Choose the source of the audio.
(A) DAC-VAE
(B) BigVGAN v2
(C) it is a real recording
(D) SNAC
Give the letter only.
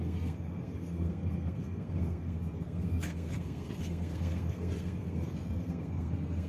D